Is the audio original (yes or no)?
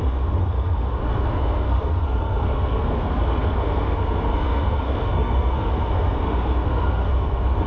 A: no